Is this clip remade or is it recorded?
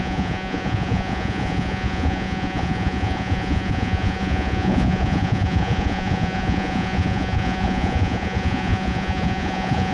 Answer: remade